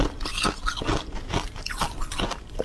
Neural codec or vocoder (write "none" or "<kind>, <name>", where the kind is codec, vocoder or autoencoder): none